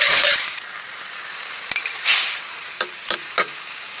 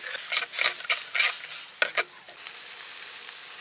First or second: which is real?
second